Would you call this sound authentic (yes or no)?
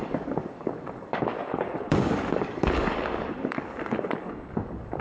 no